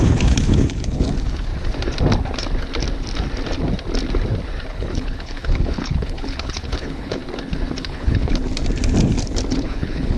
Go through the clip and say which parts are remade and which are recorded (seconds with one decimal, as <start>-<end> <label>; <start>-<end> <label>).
0.0-1.5 remade; 1.5-4.7 recorded; 4.7-7.2 remade; 7.2-7.8 recorded; 7.8-8.4 remade; 8.4-9.6 recorded; 9.6-10.2 remade